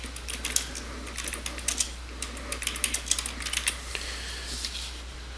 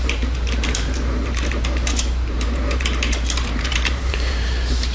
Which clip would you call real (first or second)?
first